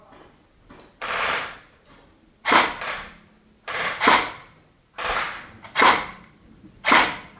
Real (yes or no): no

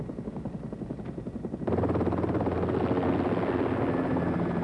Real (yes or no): yes